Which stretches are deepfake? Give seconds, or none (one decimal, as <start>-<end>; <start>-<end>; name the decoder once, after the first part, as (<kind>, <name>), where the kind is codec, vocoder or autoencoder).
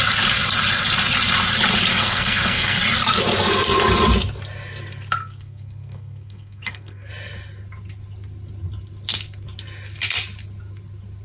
1.9-2.8 (codec, SNAC); 5.2-7.1